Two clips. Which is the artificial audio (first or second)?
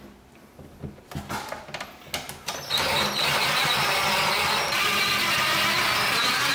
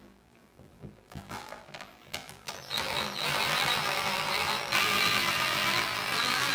second